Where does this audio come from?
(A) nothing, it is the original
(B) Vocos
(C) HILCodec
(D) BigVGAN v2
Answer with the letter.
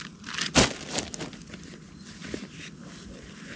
A